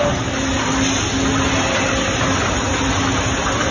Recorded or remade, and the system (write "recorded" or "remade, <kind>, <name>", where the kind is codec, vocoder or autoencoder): recorded